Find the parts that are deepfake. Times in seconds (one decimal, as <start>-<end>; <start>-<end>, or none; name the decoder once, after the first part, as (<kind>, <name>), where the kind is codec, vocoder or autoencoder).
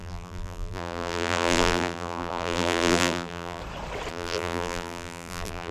0.0-3.6 (vocoder, BigVGAN v2); 4.1-5.7